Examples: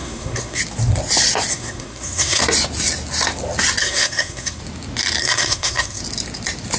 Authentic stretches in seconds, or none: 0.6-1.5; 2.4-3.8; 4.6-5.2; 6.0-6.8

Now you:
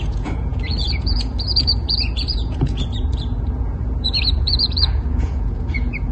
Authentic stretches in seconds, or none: none

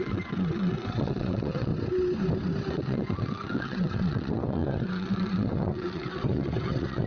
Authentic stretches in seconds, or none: 1.7-2.7

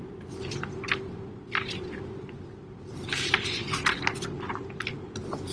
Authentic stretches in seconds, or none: 0.0-5.5

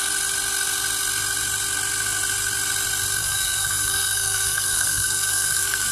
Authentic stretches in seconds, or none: 0.0-3.2

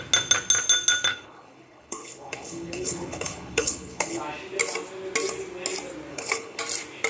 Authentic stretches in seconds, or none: 0.0-1.1; 4.2-6.1; 6.6-7.1